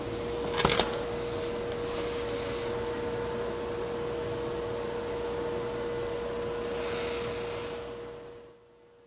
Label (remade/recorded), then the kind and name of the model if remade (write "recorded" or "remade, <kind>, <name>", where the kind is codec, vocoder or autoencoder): recorded